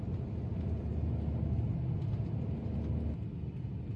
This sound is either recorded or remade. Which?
recorded